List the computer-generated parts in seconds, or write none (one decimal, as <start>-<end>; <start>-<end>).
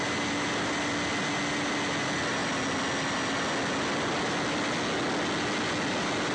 none